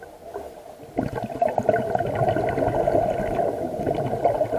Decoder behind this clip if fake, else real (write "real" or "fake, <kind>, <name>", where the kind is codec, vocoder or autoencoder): real